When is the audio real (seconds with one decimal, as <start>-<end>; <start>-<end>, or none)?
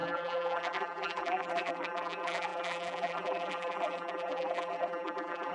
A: none